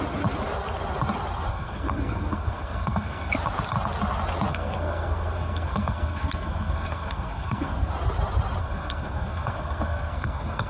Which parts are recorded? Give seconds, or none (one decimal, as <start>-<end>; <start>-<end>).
0.0-1.5; 3.3-4.5; 7.9-8.6